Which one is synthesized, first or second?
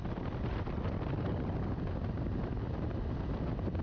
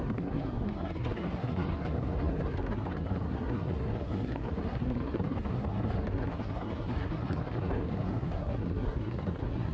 second